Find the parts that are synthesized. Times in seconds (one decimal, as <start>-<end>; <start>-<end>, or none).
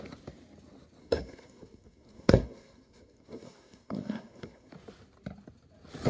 1.0-4.7